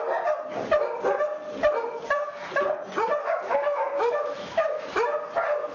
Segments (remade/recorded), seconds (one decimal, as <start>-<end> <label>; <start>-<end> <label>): 0.0-3.2 recorded; 3.2-4.8 remade; 4.8-5.7 recorded